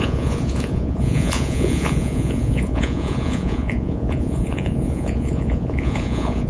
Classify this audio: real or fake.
fake